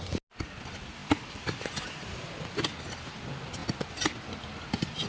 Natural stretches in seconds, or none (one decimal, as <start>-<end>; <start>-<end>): 0.0-5.1